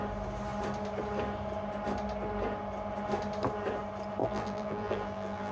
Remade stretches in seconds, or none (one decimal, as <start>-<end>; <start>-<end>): 4.2-5.5